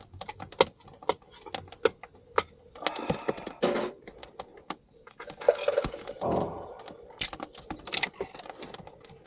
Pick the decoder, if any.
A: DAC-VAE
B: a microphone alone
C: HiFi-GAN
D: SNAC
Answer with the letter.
B